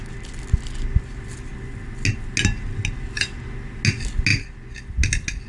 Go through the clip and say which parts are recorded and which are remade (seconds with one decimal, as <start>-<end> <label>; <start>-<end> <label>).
0.0-5.5 recorded